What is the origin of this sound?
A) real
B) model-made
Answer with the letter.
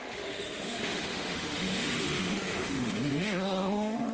B